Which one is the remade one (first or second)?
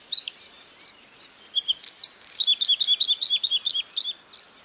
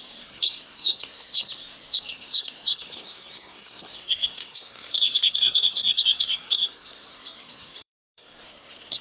second